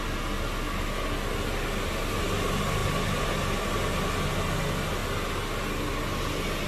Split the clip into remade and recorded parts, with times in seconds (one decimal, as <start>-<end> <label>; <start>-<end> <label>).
0.0-6.7 recorded